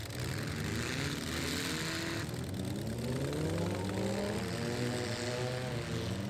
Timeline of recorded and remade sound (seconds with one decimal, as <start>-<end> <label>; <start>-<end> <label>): 0.0-6.3 recorded